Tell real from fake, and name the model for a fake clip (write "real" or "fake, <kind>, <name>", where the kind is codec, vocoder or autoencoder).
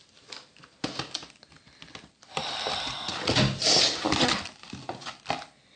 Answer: real